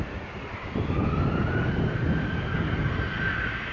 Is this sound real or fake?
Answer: real